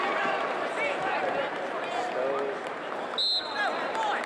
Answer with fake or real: real